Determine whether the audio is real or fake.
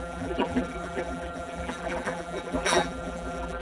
fake